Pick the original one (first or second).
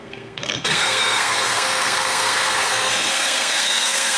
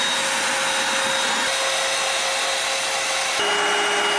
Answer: second